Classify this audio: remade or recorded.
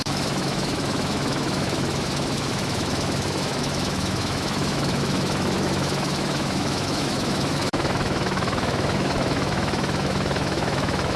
remade